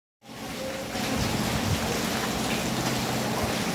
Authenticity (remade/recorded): recorded